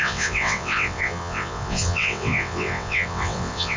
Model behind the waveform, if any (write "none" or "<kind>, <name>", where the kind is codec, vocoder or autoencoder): vocoder, WaveNeXt